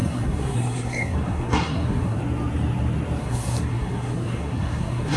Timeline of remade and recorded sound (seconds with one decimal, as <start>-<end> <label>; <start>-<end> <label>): 0.0-2.2 remade; 2.2-3.2 recorded; 3.2-5.2 remade